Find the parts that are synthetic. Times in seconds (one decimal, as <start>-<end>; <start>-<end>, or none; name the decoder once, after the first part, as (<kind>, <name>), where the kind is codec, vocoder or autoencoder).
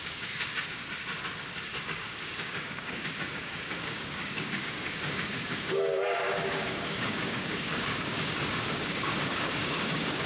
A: 0.0-0.8 (codec, DAC); 1.8-10.3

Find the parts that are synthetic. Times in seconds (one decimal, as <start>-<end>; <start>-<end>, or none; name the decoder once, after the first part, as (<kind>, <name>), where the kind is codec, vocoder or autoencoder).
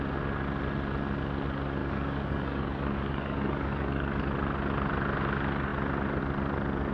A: 1.8-4.2 (codec, DAC)